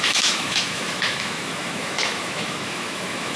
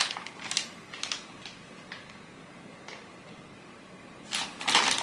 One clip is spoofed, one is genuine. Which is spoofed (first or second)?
first